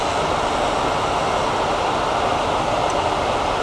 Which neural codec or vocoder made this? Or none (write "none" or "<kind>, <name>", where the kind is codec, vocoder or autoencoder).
none